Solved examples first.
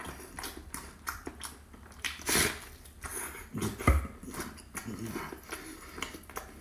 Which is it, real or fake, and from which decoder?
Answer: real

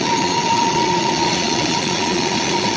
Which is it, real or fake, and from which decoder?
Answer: fake, vocoder, Vocos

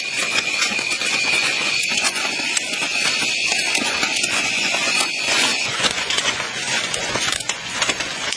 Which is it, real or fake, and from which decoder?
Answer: fake, vocoder, Vocos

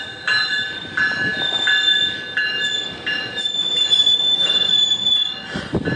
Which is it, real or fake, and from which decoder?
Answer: real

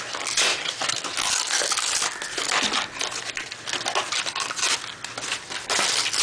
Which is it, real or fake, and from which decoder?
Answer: real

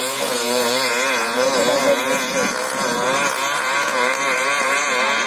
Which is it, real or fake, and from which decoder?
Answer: fake, vocoder, Vocos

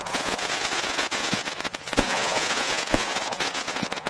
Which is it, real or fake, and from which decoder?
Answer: fake, vocoder, Vocos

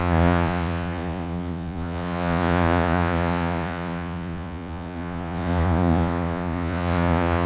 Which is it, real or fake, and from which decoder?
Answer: fake, vocoder, Vocos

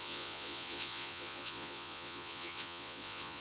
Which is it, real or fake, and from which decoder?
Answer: fake, vocoder, Vocos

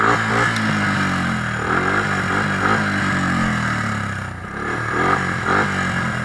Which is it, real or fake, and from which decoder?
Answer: real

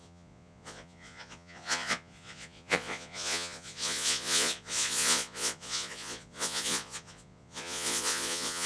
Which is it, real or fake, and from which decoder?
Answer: fake, vocoder, Vocos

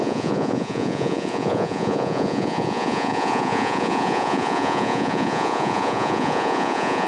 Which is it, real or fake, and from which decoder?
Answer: fake, vocoder, Vocos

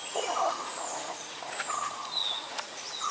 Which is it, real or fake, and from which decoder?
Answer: fake, vocoder, Vocos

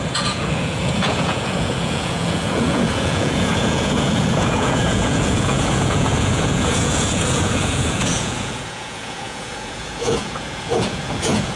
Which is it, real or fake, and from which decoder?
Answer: fake, vocoder, Vocos